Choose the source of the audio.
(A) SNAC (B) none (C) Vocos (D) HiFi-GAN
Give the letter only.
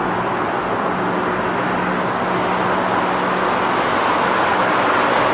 B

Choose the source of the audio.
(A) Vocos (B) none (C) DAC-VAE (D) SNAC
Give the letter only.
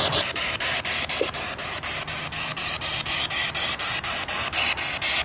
B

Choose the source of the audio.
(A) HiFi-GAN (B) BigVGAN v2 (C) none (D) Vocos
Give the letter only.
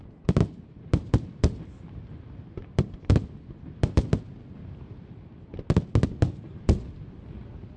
C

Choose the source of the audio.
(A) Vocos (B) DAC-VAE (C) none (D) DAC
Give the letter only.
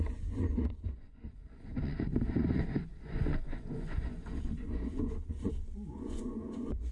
A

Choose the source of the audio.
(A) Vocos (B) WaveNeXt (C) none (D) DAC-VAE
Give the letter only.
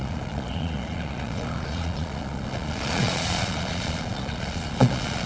A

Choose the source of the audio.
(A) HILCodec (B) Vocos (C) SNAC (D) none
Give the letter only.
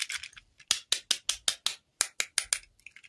D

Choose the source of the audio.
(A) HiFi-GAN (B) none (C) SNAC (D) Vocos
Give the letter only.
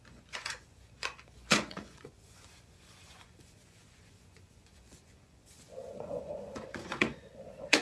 D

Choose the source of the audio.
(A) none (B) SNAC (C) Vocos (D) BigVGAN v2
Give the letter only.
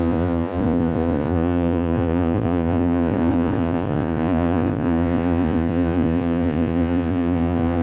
C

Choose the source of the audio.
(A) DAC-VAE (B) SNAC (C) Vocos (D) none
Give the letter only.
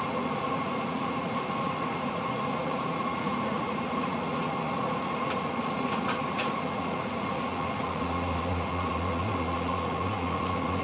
C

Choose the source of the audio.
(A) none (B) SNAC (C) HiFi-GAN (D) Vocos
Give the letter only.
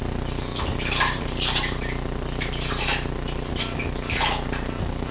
A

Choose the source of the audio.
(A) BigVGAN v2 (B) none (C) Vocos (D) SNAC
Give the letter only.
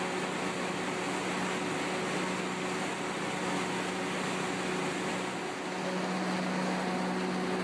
B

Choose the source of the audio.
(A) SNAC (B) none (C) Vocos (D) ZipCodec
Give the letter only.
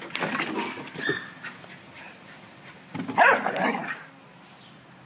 B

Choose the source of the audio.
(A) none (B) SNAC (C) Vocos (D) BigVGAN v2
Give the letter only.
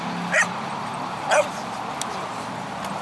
A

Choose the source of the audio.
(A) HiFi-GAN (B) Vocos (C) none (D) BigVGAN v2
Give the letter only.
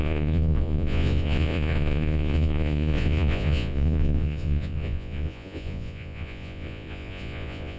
B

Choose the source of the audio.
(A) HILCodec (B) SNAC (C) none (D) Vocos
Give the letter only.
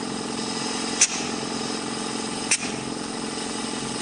C